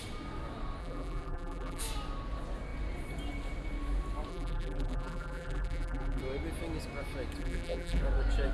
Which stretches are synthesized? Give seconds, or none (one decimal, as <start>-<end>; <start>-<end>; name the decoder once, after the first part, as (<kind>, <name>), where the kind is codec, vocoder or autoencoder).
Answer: 0.8-1.8 (vocoder, BigVGAN v2); 4.3-6.2; 7.4-8.0